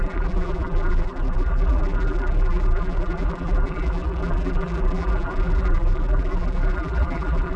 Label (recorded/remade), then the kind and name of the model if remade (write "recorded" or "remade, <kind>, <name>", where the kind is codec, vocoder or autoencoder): remade, vocoder, BigVGAN v2